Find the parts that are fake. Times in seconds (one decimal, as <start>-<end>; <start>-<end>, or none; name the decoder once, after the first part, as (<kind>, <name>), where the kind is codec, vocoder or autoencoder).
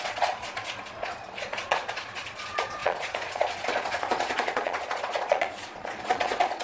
0.0-6.6 (vocoder, Vocos)